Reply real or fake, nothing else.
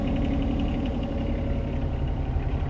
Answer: fake